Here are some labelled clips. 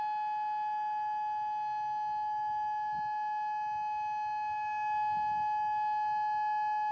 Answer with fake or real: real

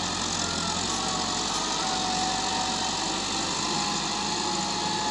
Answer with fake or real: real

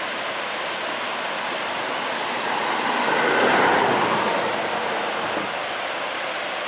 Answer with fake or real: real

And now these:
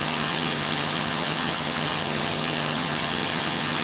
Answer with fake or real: fake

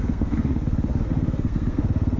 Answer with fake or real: fake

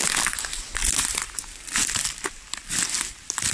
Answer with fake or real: real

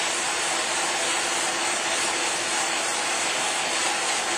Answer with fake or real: real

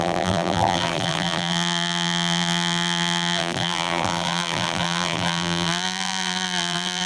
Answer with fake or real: fake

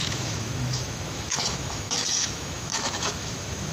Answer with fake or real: fake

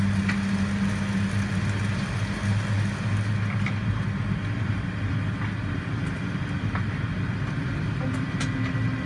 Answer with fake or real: real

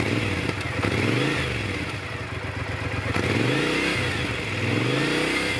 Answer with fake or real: real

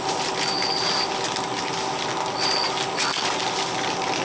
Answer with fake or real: real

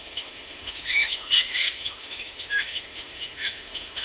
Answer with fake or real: fake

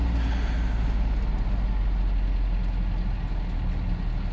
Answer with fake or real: real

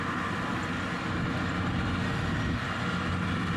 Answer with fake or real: real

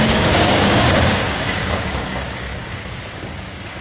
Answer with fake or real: fake